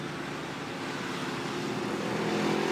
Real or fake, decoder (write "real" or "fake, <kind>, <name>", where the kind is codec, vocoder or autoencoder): real